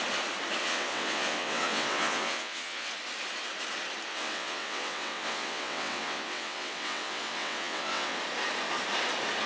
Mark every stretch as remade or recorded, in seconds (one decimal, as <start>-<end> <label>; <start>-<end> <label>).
0.0-0.6 recorded; 0.6-2.9 remade; 2.9-4.1 recorded; 4.1-8.2 remade; 8.2-9.5 recorded